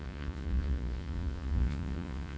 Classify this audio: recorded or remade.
remade